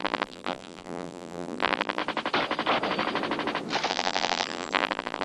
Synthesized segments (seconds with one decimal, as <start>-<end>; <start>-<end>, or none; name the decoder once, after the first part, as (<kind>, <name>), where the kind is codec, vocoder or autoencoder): 0.0-2.0 (vocoder, BigVGAN v2); 3.9-5.2